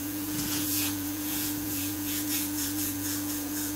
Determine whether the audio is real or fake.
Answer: fake